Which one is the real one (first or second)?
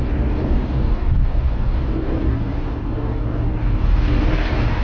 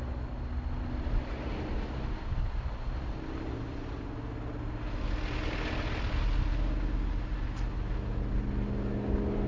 second